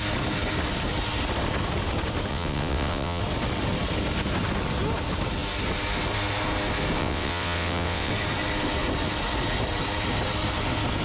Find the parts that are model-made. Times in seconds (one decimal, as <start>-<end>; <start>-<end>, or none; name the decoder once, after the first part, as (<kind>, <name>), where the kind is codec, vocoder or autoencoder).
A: 2.3-3.2 (vocoder, WaveNeXt); 7.0-8.1